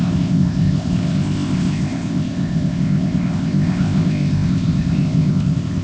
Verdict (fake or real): fake